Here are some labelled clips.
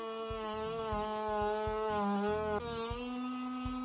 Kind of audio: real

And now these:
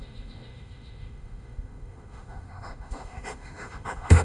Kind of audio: fake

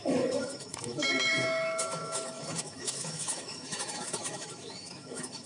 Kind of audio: fake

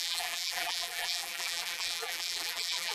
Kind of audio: fake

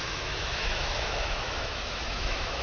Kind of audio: fake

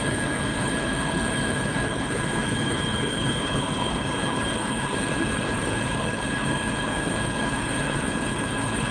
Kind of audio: fake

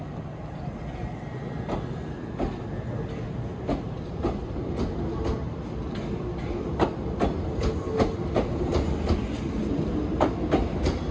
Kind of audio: real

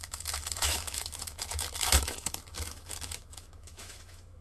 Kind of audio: fake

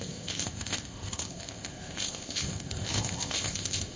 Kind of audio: fake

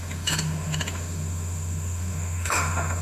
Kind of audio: fake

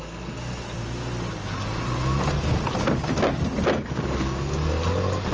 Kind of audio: real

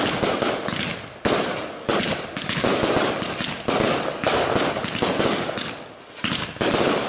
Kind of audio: real